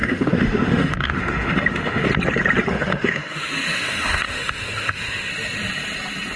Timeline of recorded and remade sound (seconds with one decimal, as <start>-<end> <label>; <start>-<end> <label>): 0.0-2.1 remade; 2.1-2.7 recorded; 2.7-5.3 remade; 5.3-6.4 recorded